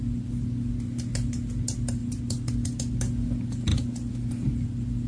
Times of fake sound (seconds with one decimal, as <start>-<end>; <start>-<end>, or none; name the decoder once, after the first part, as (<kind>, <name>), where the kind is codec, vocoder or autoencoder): none

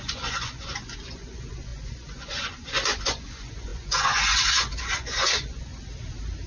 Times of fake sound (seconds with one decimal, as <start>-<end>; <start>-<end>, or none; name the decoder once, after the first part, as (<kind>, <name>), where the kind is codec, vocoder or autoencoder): 0.0-5.7 (vocoder, Vocos)

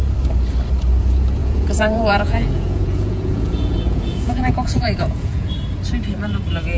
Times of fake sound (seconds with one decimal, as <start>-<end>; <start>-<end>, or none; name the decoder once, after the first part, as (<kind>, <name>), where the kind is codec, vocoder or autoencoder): 1.4-5.5 (vocoder, Vocos)

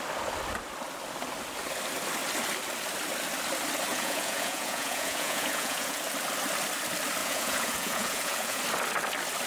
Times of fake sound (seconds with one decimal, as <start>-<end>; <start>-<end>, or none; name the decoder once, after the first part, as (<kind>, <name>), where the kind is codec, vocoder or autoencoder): 3.9-6.0 (vocoder, Vocos); 7.2-8.6

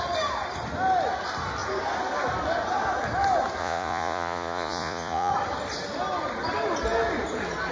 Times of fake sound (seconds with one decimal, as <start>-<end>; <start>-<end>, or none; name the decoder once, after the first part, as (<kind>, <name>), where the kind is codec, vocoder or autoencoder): 3.6-5.3 (vocoder, Vocos)

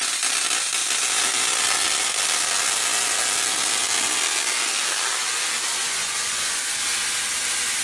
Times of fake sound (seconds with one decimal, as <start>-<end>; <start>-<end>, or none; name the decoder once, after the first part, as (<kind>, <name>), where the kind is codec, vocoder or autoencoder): 5.8-6.7 (vocoder, Vocos)

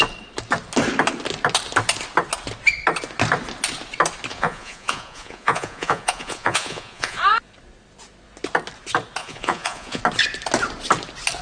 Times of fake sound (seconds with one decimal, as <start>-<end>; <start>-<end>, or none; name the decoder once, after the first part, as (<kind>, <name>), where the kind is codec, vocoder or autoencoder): 4.3-7.2 (vocoder, Vocos); 9.2-10.0

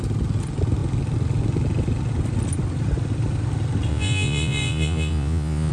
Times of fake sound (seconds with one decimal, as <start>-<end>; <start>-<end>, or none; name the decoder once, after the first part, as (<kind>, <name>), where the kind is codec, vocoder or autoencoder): 3.9-5.7 (vocoder, Vocos)